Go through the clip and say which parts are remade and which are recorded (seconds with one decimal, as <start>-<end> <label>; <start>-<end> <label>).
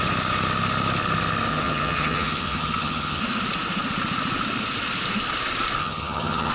0.0-1.5 recorded; 1.5-3.2 remade; 3.2-5.8 recorded; 5.8-6.5 remade